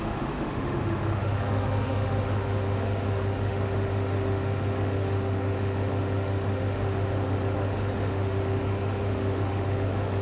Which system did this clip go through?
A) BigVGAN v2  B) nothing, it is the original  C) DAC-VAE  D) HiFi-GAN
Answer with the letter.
C